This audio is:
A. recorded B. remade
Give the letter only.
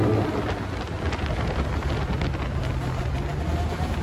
A